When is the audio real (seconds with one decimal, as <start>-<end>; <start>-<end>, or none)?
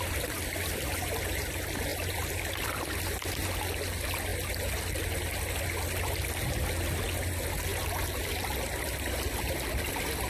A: 0.0-1.9; 3.5-10.3